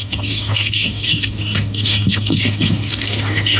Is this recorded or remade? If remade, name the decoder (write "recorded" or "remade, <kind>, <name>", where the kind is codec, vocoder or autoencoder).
remade, codec, DAC